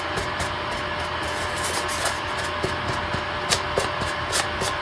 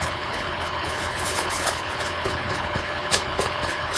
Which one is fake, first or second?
second